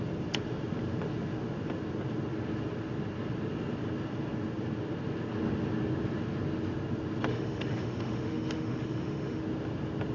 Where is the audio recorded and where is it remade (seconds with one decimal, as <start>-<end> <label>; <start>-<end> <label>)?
0.0-7.3 recorded; 7.3-9.4 remade; 9.4-10.1 recorded